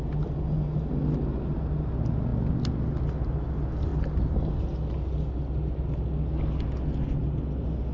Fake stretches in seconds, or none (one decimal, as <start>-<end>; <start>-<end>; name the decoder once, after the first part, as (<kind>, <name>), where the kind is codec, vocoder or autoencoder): none